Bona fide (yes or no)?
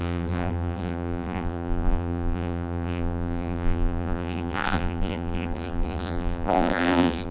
no